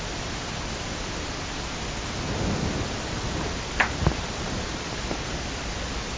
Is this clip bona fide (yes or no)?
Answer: yes